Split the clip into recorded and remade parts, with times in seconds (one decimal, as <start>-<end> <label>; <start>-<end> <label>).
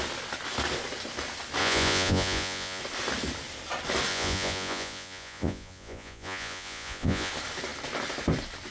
0.0-1.6 recorded; 1.6-2.8 remade; 2.8-4.1 recorded; 4.1-7.3 remade; 7.3-8.7 recorded